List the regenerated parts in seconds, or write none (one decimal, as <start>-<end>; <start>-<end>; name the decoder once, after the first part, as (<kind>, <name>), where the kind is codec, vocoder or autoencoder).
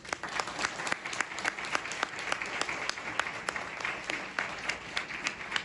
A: none